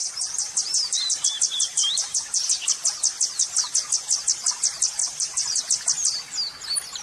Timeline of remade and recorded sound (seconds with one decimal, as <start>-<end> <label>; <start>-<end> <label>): 0.0-1.2 remade; 1.2-1.8 recorded; 1.8-2.4 remade; 2.4-5.0 recorded; 5.0-5.6 remade; 5.6-7.0 recorded